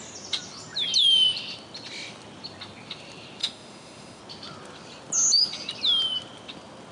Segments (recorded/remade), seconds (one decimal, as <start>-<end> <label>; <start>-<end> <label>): 0.0-3.4 recorded; 3.4-4.2 remade; 4.2-6.9 recorded

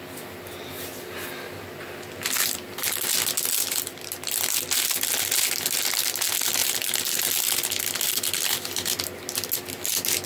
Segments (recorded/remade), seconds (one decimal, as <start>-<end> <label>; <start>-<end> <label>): 0.0-10.3 recorded